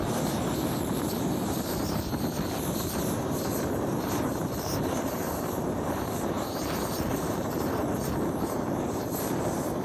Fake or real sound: fake